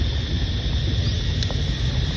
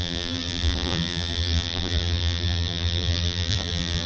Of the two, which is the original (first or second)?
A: first